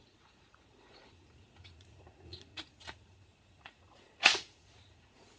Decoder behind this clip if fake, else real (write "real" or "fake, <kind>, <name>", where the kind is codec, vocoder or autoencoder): fake, vocoder, Vocos